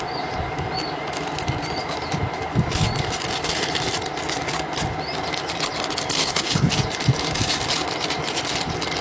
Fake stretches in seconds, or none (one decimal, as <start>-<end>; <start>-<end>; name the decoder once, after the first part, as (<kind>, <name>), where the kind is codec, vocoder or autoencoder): 6.2-6.7 (codec, HILCodec)